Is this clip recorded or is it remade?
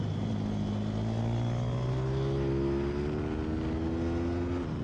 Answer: recorded